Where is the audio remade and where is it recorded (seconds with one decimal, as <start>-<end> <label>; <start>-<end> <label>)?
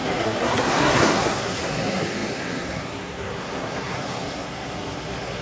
0.0-5.4 remade